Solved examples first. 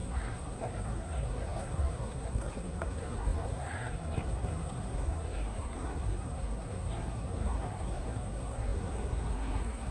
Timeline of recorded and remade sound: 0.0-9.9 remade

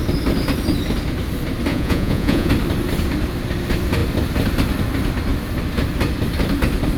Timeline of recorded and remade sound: 0.0-1.7 recorded; 1.7-2.5 remade; 2.5-7.0 recorded

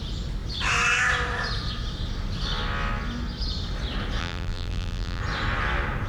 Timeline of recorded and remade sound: 0.0-4.2 recorded; 4.2-5.2 remade; 5.2-6.1 recorded

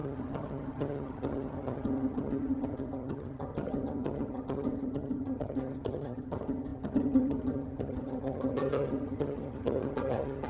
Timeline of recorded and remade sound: 0.0-10.5 remade

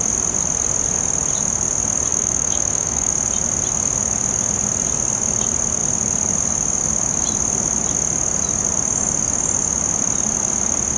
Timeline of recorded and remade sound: 0.0-2.1 recorded; 2.1-3.1 remade; 3.1-11.0 recorded

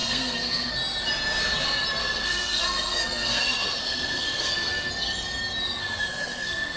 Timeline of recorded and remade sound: 0.0-0.7 remade; 0.7-2.0 recorded; 2.0-4.9 remade; 4.9-5.8 recorded; 5.8-6.8 remade

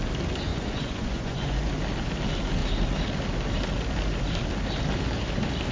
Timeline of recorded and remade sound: 0.0-0.5 recorded; 0.5-1.7 remade; 1.7-5.7 recorded

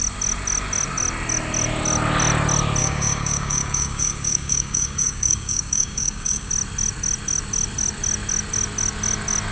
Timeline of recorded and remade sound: 0.0-2.8 recorded; 2.8-6.5 remade; 6.5-9.5 recorded